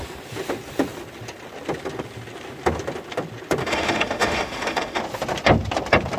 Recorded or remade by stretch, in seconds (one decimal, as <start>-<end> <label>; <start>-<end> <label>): 0.0-3.6 recorded; 3.6-5.0 remade; 5.0-6.2 recorded

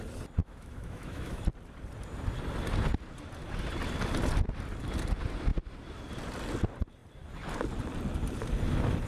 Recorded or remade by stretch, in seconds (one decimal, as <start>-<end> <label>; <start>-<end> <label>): 0.0-0.4 recorded; 0.4-1.4 remade; 1.4-9.1 recorded

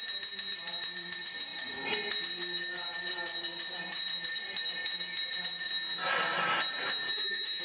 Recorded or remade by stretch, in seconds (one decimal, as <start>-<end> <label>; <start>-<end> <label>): 0.0-7.1 recorded; 7.1-7.6 remade

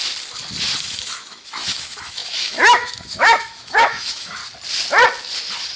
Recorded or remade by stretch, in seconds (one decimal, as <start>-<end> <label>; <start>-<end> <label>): 0.0-0.8 recorded; 0.8-4.4 remade; 4.4-5.8 recorded

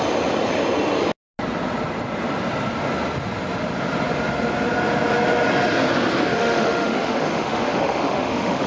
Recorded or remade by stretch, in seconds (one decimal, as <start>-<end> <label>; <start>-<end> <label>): 0.0-6.3 recorded; 6.3-8.7 remade